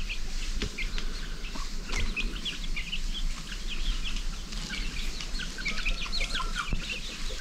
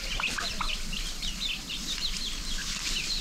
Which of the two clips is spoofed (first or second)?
second